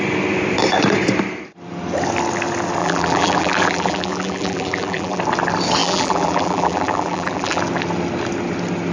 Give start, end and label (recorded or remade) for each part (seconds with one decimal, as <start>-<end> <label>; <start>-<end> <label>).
0.0-2.8 recorded; 2.8-5.2 remade; 5.2-5.8 recorded; 5.8-7.6 remade; 7.6-8.9 recorded